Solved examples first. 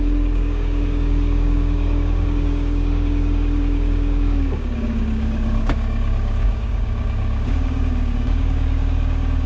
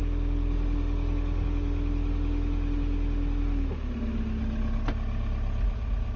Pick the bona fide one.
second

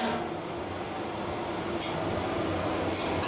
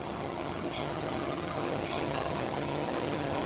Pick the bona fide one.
first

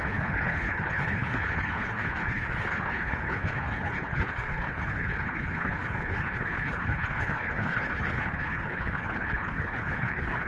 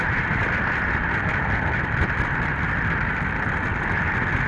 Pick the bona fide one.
second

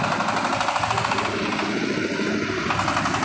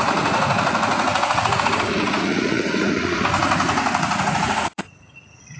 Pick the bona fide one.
first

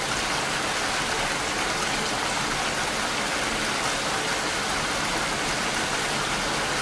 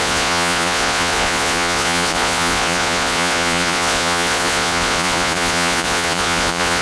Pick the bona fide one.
first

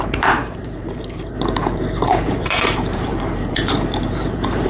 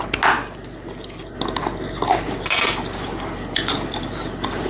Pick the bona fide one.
second